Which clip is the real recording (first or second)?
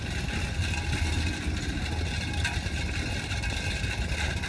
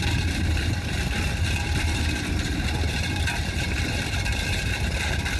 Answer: first